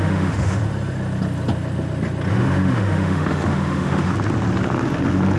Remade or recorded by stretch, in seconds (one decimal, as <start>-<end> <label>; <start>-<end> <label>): 0.0-0.6 remade; 0.6-2.3 recorded; 2.3-4.1 remade; 4.1-5.4 recorded